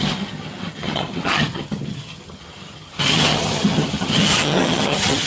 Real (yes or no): no